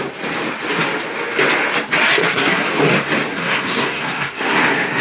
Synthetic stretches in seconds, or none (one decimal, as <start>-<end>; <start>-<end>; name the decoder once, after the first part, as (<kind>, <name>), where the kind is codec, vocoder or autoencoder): 2.2-2.7 (codec, SNAC); 3.3-5.0